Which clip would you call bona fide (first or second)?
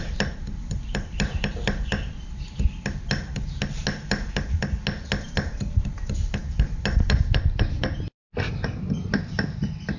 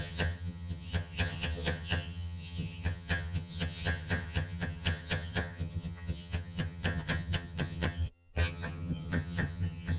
first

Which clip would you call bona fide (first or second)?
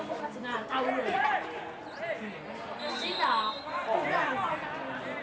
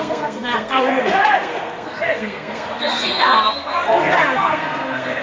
first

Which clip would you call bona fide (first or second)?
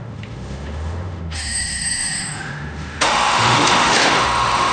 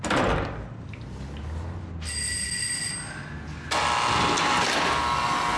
second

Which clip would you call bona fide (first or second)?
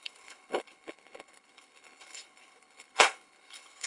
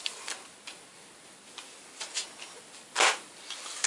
second